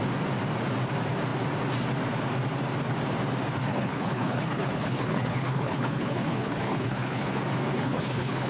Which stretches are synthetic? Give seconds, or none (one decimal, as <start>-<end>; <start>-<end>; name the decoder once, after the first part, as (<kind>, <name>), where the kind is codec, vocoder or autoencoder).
3.6-7.3 (codec, HILCodec); 7.7-8.5